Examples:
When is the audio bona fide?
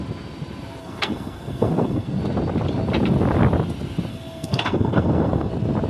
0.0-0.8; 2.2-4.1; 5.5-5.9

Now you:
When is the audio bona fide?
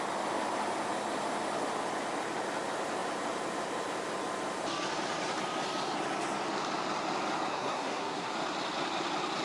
0.0-7.5; 8.3-9.4